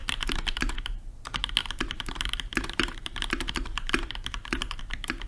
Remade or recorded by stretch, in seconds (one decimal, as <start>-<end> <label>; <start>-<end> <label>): 0.0-1.1 remade; 1.1-1.6 recorded; 1.6-4.8 remade; 4.8-5.3 recorded